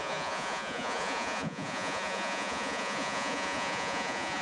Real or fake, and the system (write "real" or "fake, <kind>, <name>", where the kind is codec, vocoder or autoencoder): fake, vocoder, Vocos